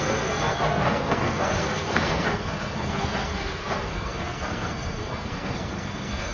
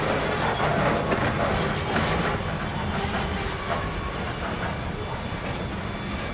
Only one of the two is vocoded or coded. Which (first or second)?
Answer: first